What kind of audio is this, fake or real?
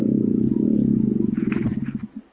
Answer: real